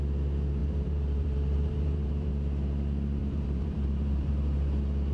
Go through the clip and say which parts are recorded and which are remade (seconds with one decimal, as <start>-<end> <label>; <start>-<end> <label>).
0.0-0.6 recorded; 0.6-2.3 remade; 2.3-3.2 recorded; 3.2-4.3 remade; 4.3-5.1 recorded